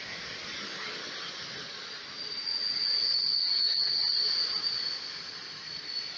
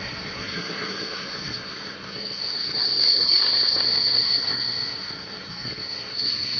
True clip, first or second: first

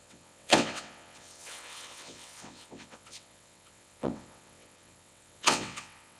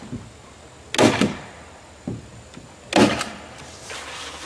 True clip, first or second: second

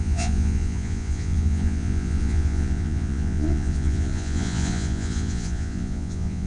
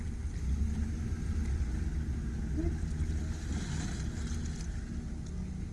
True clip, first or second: second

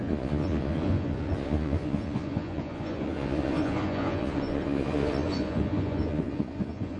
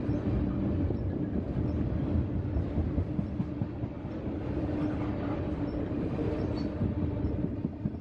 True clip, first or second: second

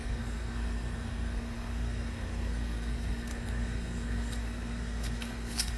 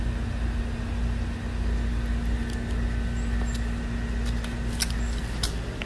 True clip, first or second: second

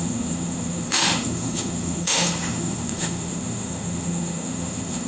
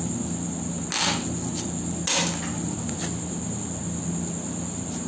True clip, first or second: second